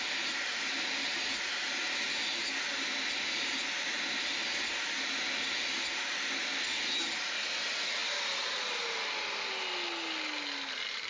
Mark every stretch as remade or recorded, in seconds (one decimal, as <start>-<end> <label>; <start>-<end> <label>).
0.0-11.1 recorded